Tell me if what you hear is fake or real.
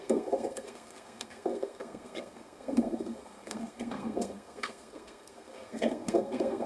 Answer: fake